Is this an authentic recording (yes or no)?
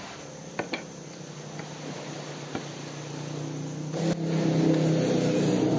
yes